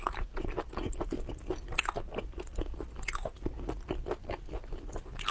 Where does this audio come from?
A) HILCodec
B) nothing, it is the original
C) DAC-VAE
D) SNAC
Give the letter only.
B